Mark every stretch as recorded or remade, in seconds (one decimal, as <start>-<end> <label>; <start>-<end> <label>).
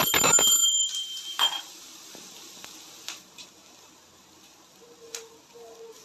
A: 0.0-0.6 recorded; 0.6-3.5 remade; 3.5-6.0 recorded